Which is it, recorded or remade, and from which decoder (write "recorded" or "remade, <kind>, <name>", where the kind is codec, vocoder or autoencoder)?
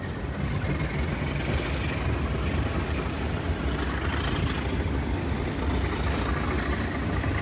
recorded